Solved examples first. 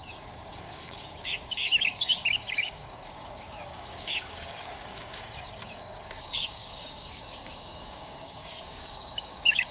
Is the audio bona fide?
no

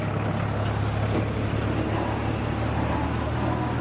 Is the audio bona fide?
yes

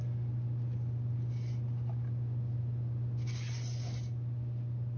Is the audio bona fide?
yes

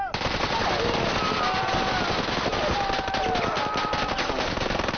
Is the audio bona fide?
yes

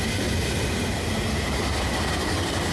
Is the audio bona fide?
yes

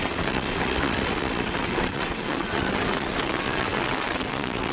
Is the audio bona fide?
no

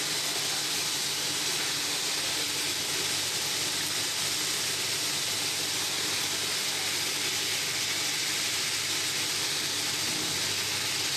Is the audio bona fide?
yes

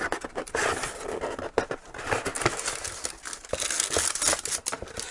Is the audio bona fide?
yes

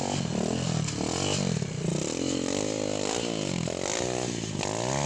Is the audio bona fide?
yes